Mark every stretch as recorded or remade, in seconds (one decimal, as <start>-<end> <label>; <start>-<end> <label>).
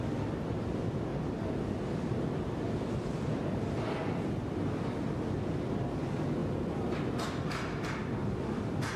0.0-9.0 recorded